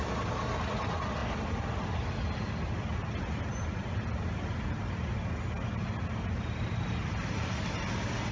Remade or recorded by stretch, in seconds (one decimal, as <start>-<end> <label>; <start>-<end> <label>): 0.0-8.3 recorded